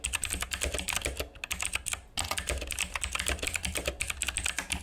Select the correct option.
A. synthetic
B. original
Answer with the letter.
B